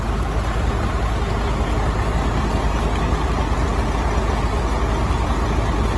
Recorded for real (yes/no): yes